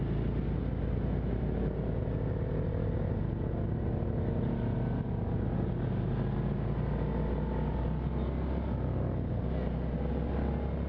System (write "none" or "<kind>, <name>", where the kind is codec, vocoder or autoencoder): none